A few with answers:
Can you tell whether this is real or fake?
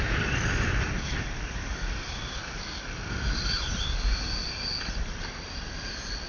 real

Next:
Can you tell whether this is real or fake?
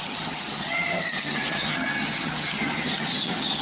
fake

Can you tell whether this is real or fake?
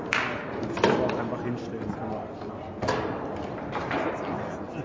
real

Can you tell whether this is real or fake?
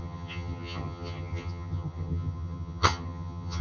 fake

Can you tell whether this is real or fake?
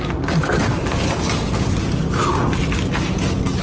real